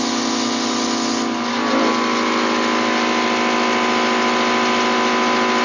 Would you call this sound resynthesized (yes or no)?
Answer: no